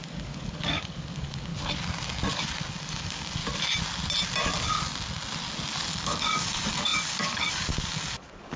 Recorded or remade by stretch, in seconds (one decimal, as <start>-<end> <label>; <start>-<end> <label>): 0.0-1.5 remade; 1.5-2.7 recorded; 2.7-3.4 remade; 3.4-5.9 recorded; 5.9-8.6 remade

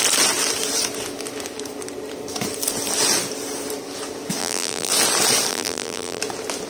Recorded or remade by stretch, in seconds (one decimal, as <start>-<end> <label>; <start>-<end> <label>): 0.0-4.4 recorded; 4.4-4.9 remade; 4.9-5.5 recorded; 5.5-6.2 remade; 6.2-6.7 recorded

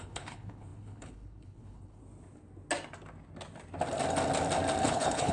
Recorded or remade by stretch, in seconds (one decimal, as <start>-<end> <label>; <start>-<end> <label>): 0.0-2.0 remade; 2.0-4.8 recorded; 4.8-5.3 remade

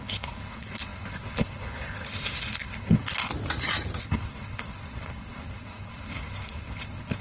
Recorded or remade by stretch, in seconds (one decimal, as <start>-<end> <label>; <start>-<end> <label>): 0.0-3.3 remade; 3.3-4.0 recorded; 4.0-7.2 remade

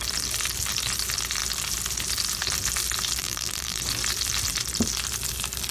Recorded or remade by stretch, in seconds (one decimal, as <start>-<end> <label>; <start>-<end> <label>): 0.0-3.2 recorded; 3.2-3.8 remade; 3.8-5.7 recorded

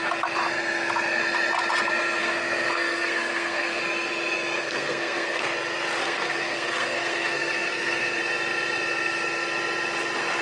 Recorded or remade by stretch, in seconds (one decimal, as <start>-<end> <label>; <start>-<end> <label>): 0.0-2.2 recorded; 2.2-3.8 remade; 3.8-4.6 recorded; 4.6-5.4 remade; 5.4-6.0 recorded; 6.0-8.2 remade; 8.2-10.4 recorded

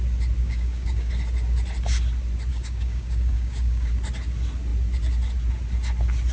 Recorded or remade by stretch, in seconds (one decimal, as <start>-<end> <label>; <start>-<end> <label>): 0.0-0.4 recorded; 0.4-1.1 remade; 1.1-2.5 recorded; 2.5-3.9 remade; 3.9-6.3 recorded

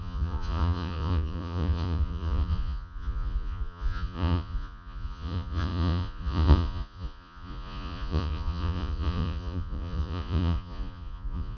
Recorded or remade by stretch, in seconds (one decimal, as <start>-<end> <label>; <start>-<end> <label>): 0.0-11.6 remade